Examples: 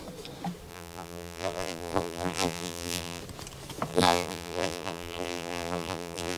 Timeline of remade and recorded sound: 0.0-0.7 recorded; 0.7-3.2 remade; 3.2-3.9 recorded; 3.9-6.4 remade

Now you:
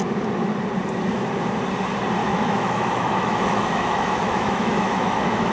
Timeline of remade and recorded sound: 0.0-2.2 recorded; 2.2-5.5 remade

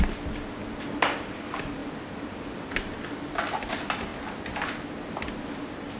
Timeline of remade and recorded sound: 0.0-6.0 recorded

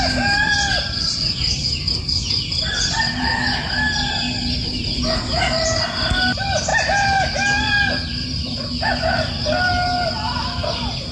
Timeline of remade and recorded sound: 0.0-11.1 recorded

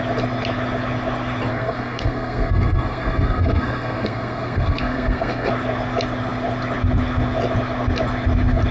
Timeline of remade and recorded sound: 0.0-1.5 recorded; 1.5-5.5 remade; 5.5-8.7 recorded

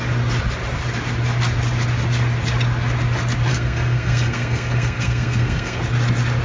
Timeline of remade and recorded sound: 0.0-3.5 recorded; 3.5-5.8 remade; 5.8-6.4 recorded

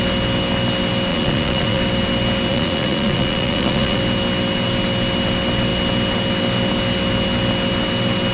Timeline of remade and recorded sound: 0.0-1.1 recorded; 1.1-1.8 remade; 1.8-2.5 recorded; 2.5-4.0 remade; 4.0-8.3 recorded

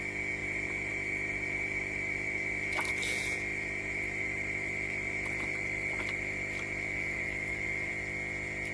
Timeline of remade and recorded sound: 0.0-0.4 recorded; 0.4-2.9 remade; 2.9-3.5 recorded; 3.5-7.9 remade; 7.9-8.7 recorded